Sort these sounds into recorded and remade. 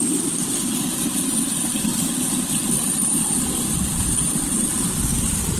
remade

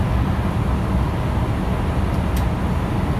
recorded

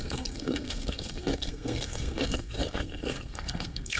remade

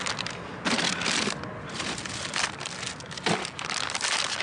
recorded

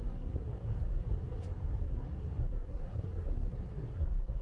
remade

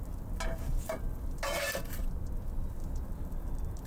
recorded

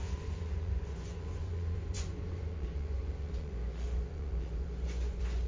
remade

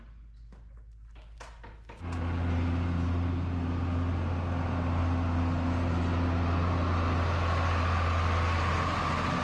recorded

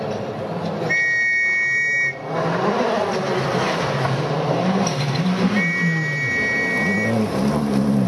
recorded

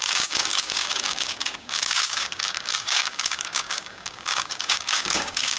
remade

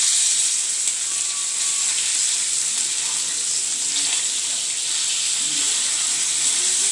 recorded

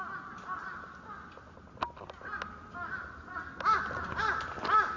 recorded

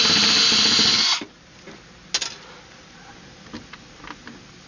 recorded